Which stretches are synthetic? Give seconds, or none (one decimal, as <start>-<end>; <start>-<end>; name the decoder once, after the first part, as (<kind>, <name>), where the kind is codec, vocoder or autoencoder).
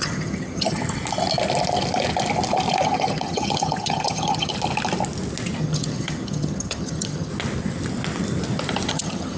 0.0-0.8 (vocoder, HiFi-GAN); 2.8-4.5; 5.6-7.3; 8.9-9.4